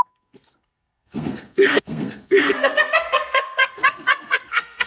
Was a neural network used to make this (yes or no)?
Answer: yes